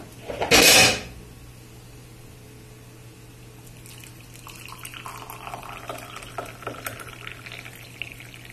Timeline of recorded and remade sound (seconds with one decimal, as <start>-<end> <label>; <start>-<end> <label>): 0.0-8.5 recorded